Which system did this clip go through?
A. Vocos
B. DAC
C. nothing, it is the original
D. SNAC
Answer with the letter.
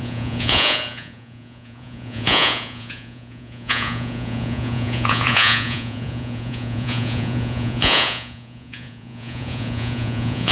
A